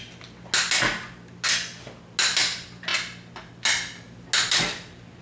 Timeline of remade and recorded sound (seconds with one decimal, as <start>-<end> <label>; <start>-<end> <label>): 0.0-5.2 recorded